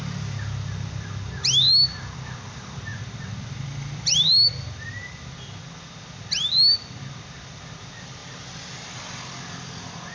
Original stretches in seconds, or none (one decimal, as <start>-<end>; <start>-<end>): 0.0-10.1